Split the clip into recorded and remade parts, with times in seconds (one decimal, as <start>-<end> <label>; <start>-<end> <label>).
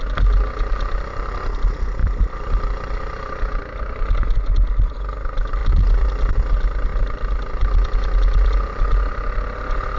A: 0.0-10.0 recorded